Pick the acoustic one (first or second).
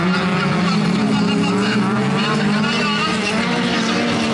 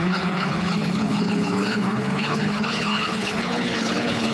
first